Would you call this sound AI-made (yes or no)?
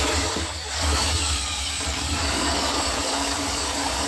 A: yes